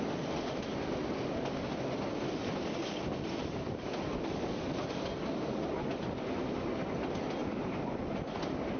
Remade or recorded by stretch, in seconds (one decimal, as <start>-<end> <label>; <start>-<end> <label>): 0.0-7.4 recorded; 7.4-8.0 remade; 8.0-8.8 recorded